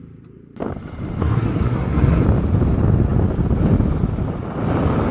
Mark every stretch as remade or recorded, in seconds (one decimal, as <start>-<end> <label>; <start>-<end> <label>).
0.0-1.2 recorded; 1.2-2.2 remade; 2.2-5.1 recorded